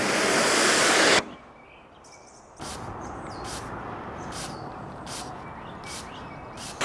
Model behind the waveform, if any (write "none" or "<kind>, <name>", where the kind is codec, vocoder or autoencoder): none